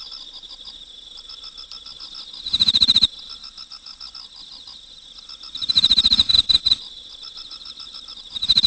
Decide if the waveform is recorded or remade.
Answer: recorded